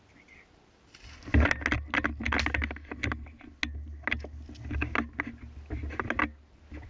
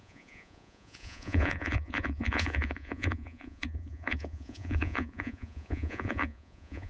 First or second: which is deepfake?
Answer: second